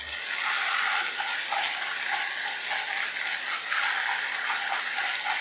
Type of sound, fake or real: real